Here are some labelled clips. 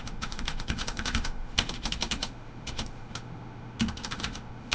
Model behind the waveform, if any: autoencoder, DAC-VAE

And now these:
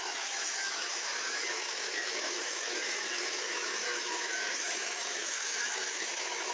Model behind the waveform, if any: autoencoder, DAC-VAE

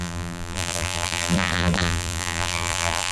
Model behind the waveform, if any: vocoder, BigVGAN v2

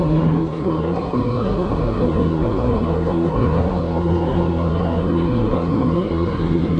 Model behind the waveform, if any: codec, SNAC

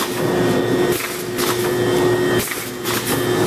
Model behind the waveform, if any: none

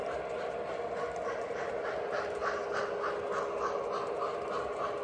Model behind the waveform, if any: none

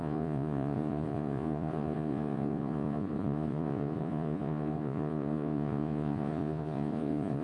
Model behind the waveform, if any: vocoder, Vocos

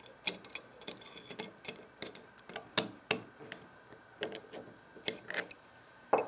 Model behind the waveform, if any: none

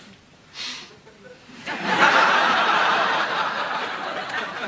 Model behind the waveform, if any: vocoder, BigVGAN v2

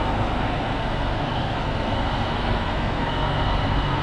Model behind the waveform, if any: codec, SNAC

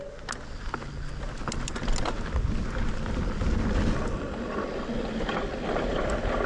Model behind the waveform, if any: none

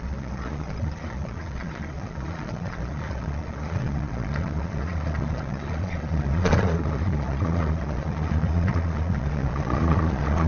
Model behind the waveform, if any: vocoder, Vocos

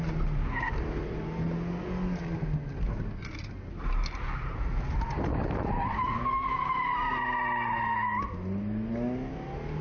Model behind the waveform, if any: none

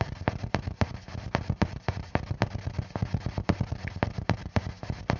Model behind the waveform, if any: none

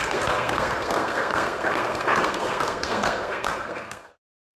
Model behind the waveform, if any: codec, SNAC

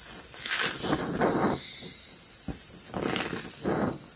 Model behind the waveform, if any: none